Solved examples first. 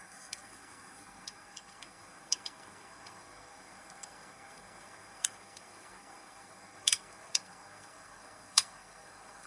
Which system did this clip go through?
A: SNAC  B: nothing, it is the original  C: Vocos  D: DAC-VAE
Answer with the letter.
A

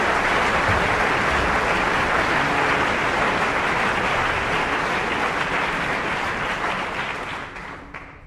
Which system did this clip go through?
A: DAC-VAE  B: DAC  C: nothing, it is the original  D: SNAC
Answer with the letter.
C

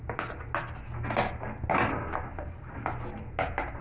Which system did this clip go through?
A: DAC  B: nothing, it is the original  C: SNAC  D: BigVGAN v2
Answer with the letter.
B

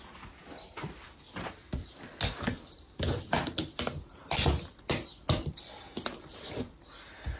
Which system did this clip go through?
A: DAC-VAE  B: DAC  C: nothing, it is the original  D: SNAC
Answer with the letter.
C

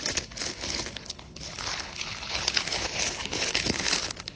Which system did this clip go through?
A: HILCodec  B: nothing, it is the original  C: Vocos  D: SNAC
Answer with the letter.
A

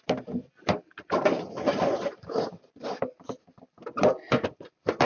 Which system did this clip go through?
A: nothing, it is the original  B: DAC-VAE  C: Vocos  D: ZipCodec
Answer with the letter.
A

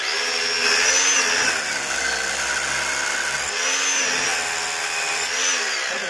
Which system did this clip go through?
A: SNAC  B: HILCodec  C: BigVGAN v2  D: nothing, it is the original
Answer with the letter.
D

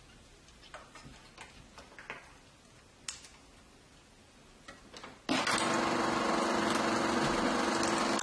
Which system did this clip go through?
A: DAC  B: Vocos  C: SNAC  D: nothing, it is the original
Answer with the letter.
D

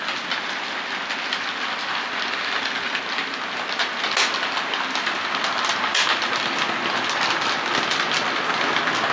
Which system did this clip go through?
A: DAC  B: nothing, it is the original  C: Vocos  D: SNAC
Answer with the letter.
B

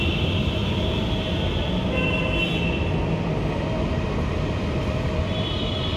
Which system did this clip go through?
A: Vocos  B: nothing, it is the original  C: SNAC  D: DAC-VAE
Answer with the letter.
B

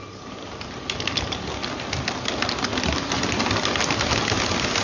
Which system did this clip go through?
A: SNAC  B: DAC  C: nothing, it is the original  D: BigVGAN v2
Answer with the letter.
C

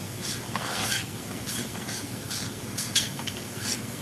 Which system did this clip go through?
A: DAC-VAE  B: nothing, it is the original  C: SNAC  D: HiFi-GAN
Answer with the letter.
C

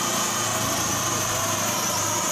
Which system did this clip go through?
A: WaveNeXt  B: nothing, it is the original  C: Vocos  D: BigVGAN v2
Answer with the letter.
D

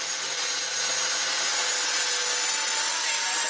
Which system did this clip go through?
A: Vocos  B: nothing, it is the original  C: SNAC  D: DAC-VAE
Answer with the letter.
B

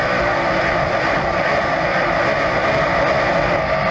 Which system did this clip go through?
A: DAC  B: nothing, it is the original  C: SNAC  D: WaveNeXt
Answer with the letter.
B